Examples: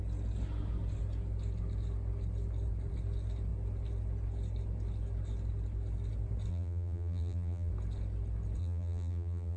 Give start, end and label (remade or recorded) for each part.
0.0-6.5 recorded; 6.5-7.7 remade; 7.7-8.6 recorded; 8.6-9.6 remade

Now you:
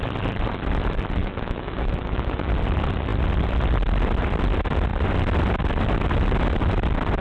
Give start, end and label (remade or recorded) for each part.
0.0-1.2 recorded; 1.2-2.5 remade; 2.5-7.2 recorded

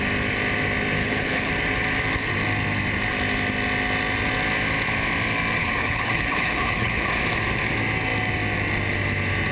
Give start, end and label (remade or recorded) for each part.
0.0-1.0 recorded; 1.0-1.5 remade; 1.5-5.6 recorded; 5.6-7.1 remade; 7.1-9.5 recorded

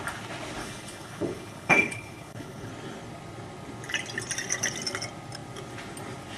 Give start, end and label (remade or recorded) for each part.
0.0-0.6 recorded; 0.6-2.7 remade; 2.7-6.4 recorded

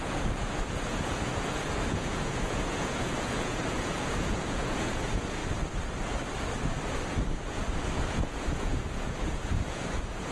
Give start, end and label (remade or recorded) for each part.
0.0-5.4 remade; 5.4-7.5 recorded; 7.5-10.3 remade

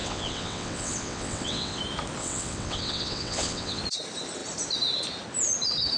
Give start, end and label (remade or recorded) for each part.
0.0-1.8 remade; 1.8-2.2 recorded; 2.2-3.8 remade; 3.8-6.0 recorded